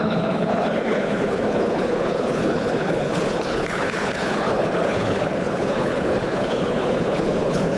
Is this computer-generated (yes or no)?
yes